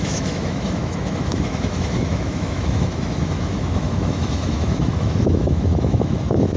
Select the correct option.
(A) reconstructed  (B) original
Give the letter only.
A